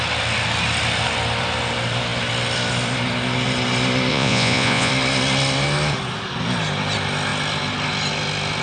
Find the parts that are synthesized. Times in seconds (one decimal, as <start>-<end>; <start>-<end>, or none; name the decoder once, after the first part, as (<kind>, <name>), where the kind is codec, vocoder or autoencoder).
4.1-4.9 (vocoder, Vocos)